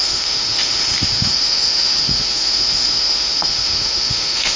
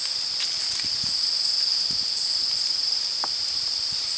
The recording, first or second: second